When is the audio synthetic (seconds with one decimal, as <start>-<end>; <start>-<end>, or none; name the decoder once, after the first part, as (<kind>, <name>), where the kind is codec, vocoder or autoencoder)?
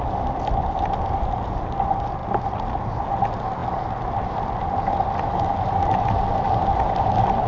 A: none